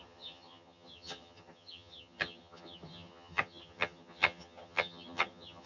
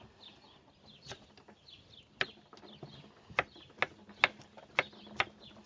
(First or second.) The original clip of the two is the second